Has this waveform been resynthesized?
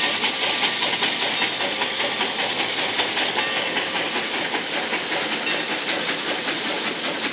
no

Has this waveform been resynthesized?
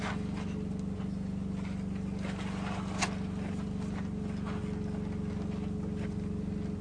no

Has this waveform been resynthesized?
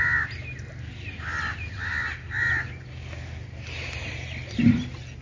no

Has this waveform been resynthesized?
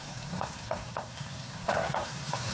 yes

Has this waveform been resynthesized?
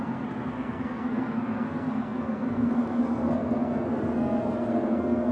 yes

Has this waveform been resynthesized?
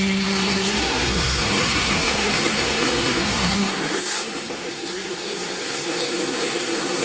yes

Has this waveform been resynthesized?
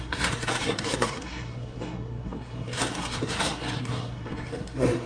yes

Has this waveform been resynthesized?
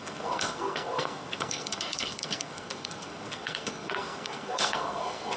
yes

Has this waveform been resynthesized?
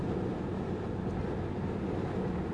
no